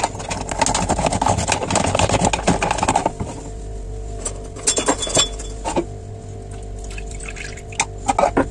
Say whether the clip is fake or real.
real